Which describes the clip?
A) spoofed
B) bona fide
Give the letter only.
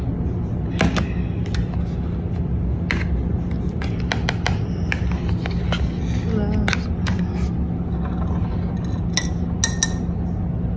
B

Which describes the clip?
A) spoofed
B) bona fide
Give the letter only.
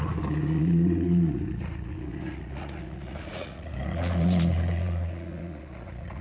A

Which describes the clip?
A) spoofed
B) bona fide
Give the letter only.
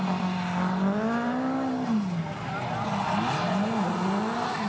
B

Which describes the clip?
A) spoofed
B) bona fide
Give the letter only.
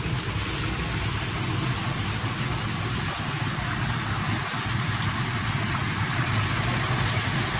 B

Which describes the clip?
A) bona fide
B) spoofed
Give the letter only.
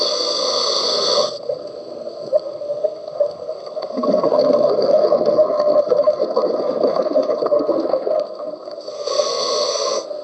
B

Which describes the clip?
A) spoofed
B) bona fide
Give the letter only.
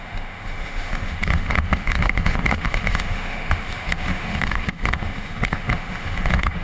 A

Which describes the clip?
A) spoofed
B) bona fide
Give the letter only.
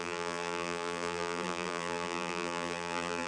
A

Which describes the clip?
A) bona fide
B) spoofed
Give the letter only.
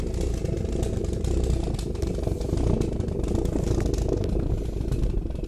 A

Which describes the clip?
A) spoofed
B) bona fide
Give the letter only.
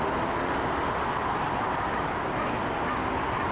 B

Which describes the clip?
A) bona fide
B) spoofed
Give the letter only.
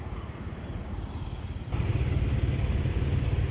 A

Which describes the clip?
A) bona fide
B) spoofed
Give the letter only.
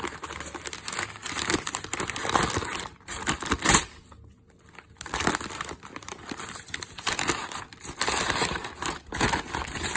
A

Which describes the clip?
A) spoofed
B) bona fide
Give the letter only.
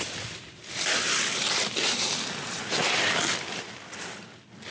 B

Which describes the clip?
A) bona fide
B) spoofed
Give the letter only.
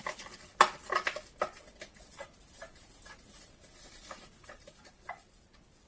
A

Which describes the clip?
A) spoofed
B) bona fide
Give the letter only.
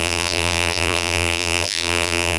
A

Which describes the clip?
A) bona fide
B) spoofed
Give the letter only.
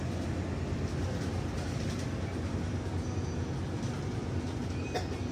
A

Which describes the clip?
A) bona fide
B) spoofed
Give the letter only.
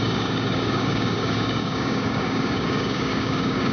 B